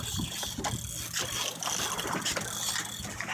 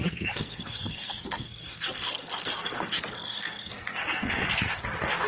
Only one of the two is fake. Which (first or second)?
second